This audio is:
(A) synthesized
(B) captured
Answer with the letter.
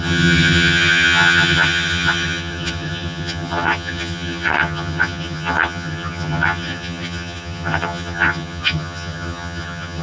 A